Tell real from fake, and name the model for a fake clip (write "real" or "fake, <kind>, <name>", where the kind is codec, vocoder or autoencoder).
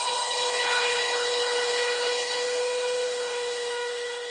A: fake, codec, HILCodec